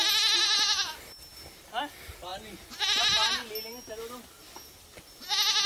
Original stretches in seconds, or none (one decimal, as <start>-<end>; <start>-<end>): 0.0-5.7

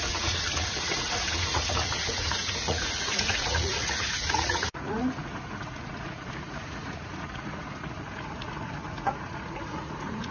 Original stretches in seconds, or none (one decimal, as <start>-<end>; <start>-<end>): none